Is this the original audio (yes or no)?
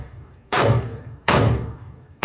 no